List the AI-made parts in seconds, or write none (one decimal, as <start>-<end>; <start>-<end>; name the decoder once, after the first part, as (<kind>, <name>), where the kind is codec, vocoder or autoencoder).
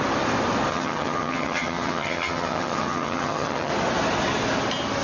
0.7-3.7 (vocoder, HiFi-GAN)